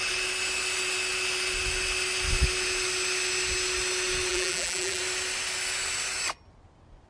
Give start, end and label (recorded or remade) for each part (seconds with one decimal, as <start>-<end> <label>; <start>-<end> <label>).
0.0-4.3 recorded; 4.3-5.0 remade; 5.0-7.1 recorded